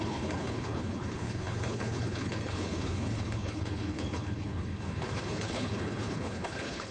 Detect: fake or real fake